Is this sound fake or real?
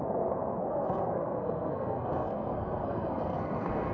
fake